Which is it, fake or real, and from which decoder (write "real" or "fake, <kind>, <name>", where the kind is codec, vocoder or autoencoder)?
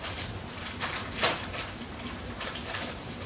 fake, vocoder, BigVGAN v2